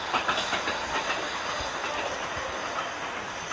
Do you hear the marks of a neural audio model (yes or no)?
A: no